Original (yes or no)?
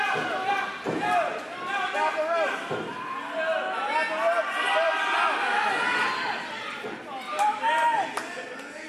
yes